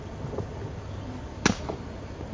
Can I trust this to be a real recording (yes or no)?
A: yes